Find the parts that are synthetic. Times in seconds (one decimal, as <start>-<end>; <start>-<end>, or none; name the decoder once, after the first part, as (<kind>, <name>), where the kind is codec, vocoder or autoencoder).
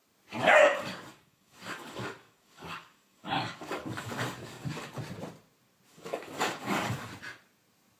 0.4-5.0 (codec, DAC); 5.9-7.1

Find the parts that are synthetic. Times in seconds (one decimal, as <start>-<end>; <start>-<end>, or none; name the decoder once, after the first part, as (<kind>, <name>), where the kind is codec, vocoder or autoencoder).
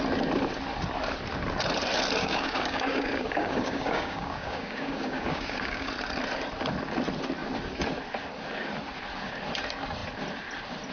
2.2-5.9 (codec, DAC)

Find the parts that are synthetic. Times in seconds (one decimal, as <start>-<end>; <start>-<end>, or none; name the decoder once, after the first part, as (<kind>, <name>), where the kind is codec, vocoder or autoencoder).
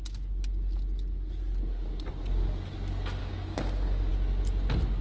3.2-4.1 (codec, DAC)